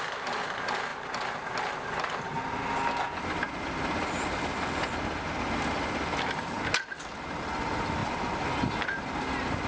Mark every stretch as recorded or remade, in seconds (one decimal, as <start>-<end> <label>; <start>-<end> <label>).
0.0-9.7 recorded